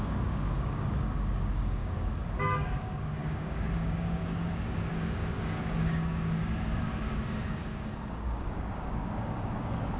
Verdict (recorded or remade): remade